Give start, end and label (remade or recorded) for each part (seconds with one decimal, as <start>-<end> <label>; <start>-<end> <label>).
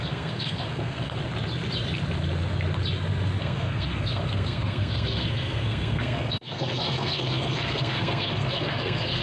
0.0-1.2 remade; 1.2-3.4 recorded; 3.4-9.2 remade